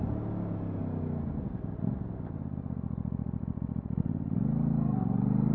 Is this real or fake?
real